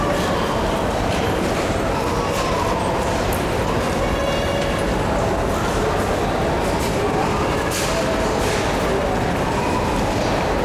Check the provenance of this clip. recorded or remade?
recorded